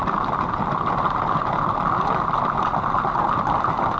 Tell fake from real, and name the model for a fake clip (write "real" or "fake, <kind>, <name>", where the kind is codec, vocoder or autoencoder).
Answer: real